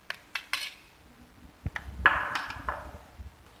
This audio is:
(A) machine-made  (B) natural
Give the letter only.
B